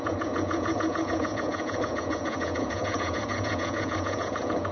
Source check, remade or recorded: remade